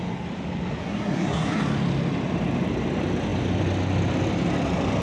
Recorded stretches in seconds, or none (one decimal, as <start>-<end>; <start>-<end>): 0.0-0.8; 1.6-5.0